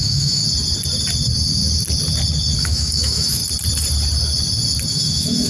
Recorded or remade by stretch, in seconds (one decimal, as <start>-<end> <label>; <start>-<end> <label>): 0.0-0.4 remade; 0.4-2.6 recorded; 2.6-3.4 remade; 3.4-4.9 recorded; 4.9-5.5 remade

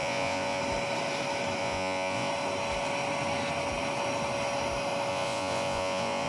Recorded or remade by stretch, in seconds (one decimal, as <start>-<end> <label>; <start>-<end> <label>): 0.0-0.6 remade; 0.6-1.6 recorded; 1.6-2.3 remade; 2.3-5.1 recorded; 5.1-6.3 remade

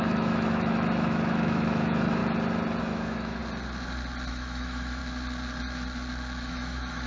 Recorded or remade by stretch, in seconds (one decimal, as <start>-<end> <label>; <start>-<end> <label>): 0.0-2.2 remade; 2.2-2.8 recorded; 2.8-3.4 remade; 3.4-4.3 recorded; 4.3-5.0 remade; 5.0-6.4 recorded; 6.4-7.1 remade

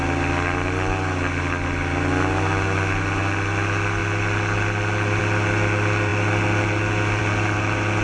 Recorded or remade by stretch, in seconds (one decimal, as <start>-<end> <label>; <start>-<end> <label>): 0.0-8.0 recorded